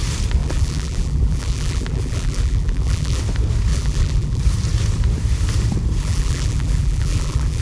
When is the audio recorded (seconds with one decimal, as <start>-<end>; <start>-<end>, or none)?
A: 0.0-0.4; 3.2-3.7; 4.4-6.0